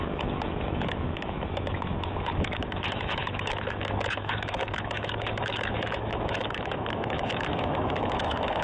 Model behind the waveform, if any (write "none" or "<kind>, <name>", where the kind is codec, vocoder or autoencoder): autoencoder, DAC-VAE